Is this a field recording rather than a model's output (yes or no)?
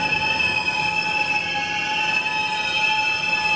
yes